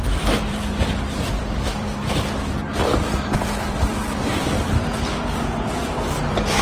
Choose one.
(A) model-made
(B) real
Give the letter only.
A